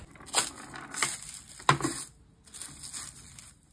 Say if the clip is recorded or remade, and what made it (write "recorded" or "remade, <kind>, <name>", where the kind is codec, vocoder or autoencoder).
recorded